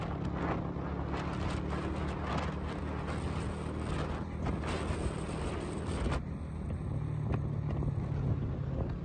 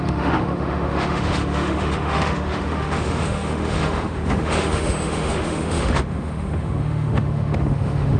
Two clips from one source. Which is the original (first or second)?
first